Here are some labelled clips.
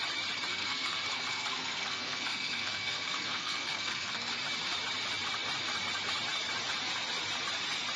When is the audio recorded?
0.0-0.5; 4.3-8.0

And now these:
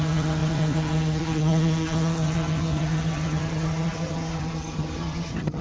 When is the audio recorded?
none

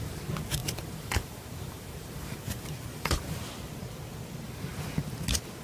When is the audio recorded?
0.0-0.6; 3.2-5.6

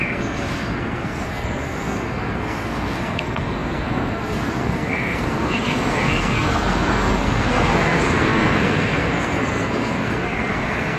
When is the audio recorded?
none

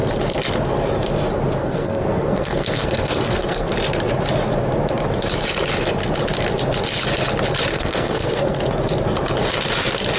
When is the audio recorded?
0.0-1.6; 3.7-7.7; 8.6-10.2